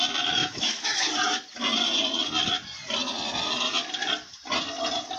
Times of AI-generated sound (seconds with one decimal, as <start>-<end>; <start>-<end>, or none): 0.4-1.1